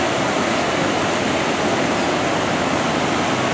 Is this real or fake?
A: real